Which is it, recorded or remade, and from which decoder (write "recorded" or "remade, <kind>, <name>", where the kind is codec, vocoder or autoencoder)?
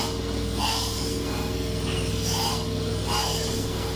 remade, codec, SNAC